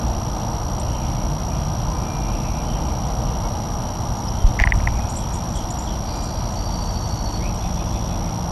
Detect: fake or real real